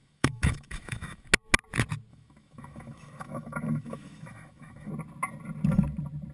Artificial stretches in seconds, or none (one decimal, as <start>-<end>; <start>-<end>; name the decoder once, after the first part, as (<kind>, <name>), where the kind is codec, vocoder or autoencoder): 0.0-1.3 (autoencoder, DAC-VAE); 2.1-4.9